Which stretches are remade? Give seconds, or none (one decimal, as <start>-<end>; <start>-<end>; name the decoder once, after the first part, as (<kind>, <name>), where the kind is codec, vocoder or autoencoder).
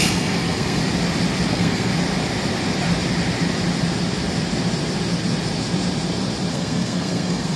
0.0-0.8 (codec, SNAC); 1.5-1.9; 6.5-7.6